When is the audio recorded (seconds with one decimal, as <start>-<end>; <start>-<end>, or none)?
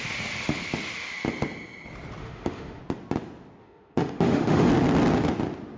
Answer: 0.0-2.2; 2.8-3.6; 4.7-5.8